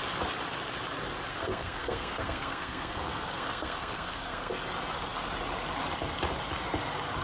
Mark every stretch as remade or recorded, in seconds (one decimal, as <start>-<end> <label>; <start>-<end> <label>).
0.0-1.3 recorded; 1.3-4.5 remade; 4.5-7.2 recorded